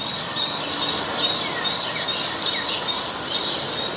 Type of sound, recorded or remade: recorded